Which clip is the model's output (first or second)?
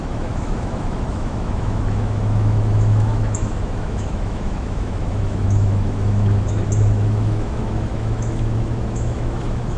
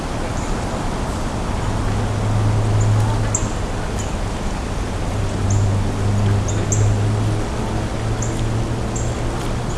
first